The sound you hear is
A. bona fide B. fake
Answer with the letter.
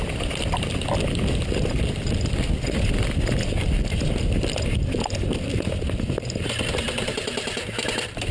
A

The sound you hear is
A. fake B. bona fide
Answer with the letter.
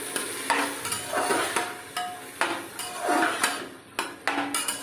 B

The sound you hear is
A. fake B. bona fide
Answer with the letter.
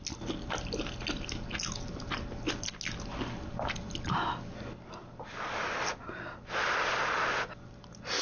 B